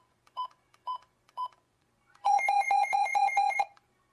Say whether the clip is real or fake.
fake